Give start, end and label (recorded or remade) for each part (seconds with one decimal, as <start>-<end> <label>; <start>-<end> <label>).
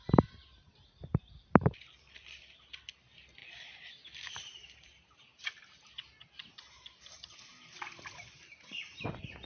0.0-0.5 recorded; 0.5-2.6 remade; 2.6-3.4 recorded; 3.4-4.3 remade; 4.3-9.5 recorded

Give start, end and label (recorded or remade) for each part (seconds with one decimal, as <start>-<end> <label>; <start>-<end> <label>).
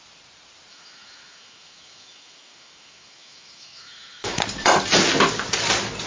0.0-0.7 recorded; 0.7-4.4 remade; 4.4-6.1 recorded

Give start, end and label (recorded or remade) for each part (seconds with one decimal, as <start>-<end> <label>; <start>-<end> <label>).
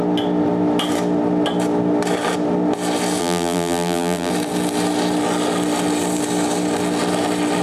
0.0-3.2 recorded; 3.2-4.3 remade; 4.3-7.6 recorded